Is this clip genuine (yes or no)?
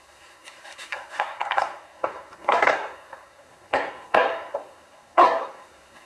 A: no